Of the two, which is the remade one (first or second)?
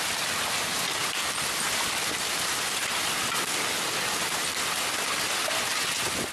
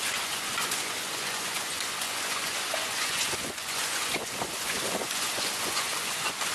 second